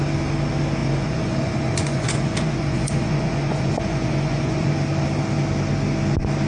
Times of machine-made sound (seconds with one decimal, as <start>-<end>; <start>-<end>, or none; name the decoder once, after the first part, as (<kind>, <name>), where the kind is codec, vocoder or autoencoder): 0.8-4.7 (vocoder, Vocos)